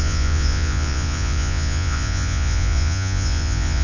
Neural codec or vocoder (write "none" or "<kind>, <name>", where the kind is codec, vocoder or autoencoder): vocoder, Vocos